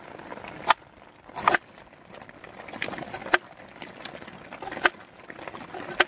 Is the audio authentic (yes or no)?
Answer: yes